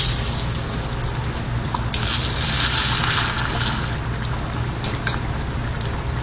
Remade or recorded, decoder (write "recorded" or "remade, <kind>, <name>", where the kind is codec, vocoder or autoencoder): recorded